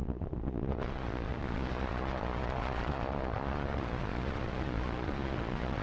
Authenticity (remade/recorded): remade